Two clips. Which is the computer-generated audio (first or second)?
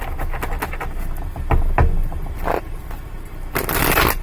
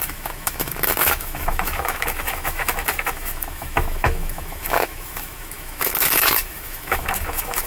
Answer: second